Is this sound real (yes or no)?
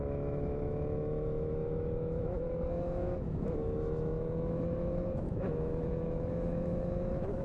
no